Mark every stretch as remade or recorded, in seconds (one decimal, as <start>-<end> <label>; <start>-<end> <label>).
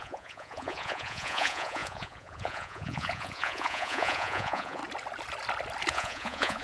0.0-4.8 remade; 4.8-5.9 recorded; 5.9-6.6 remade